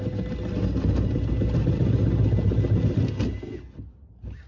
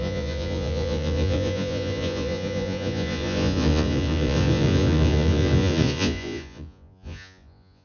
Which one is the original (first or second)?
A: first